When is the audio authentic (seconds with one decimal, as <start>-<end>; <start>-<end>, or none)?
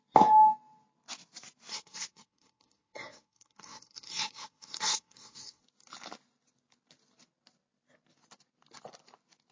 0.0-1.7; 5.6-9.5